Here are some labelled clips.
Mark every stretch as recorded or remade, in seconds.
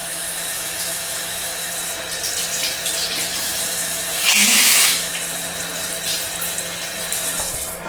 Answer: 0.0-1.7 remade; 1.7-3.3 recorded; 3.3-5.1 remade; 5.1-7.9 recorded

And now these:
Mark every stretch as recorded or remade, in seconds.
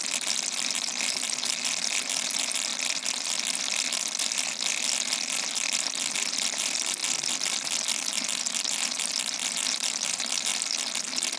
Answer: 0.0-2.7 remade; 2.7-6.1 recorded; 6.1-7.0 remade; 7.0-8.1 recorded; 8.1-10.5 remade; 10.5-11.4 recorded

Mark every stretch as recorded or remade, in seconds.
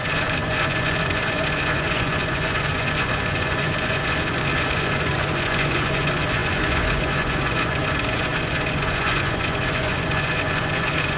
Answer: 0.0-11.2 remade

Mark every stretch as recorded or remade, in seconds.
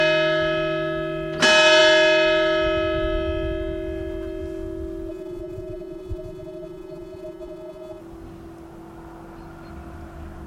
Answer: 0.0-5.1 recorded; 5.1-8.0 remade; 8.0-10.5 recorded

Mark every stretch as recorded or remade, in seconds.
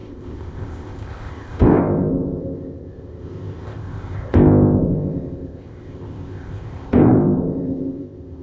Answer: 0.0-8.4 remade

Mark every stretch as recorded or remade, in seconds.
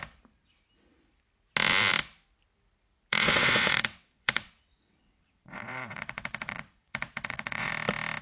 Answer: 0.0-3.1 recorded; 3.1-7.7 remade; 7.7-8.2 recorded